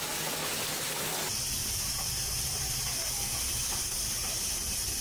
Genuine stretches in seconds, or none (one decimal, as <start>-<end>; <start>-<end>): 0.0-1.6; 4.5-5.0

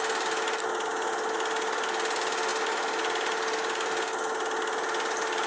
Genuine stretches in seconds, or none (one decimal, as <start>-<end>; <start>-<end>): 0.0-5.5

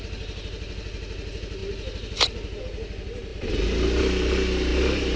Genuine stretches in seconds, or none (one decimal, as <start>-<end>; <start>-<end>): 0.0-5.2

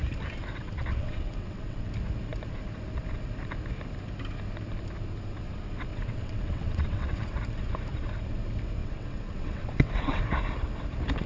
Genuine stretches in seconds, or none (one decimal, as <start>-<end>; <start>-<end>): 0.0-0.6; 1.9-5.9; 7.4-8.8; 10.2-11.3

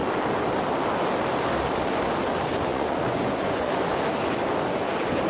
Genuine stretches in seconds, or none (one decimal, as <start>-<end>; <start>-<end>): 0.0-2.7; 3.7-5.3

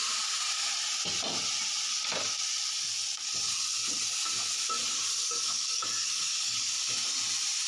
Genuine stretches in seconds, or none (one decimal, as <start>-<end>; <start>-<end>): 0.0-5.2; 6.7-7.7

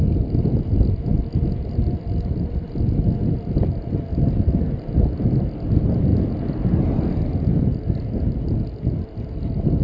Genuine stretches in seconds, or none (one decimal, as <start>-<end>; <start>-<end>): 0.0-9.8